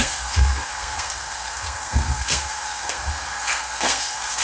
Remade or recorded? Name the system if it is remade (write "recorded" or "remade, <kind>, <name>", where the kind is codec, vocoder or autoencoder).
remade, codec, SNAC